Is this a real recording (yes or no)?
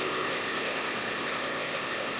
no